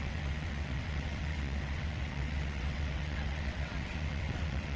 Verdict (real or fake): fake